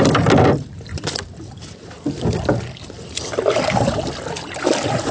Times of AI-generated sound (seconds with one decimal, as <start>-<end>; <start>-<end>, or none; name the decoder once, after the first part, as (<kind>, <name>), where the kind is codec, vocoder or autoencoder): none

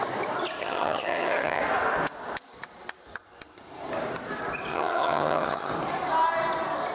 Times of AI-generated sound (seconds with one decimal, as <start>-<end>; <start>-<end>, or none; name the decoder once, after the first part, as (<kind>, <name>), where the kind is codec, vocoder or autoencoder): 0.6-1.6 (vocoder, HiFi-GAN); 4.7-5.7